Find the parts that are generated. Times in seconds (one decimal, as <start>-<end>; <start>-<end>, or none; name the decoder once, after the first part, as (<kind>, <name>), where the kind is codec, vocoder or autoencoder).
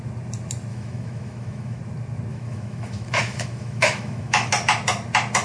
0.7-1.8 (autoencoder, DAC-VAE); 2.3-4.5